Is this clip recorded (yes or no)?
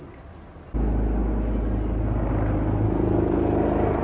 yes